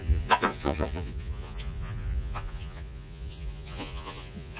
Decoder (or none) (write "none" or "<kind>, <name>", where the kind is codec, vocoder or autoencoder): vocoder, Vocos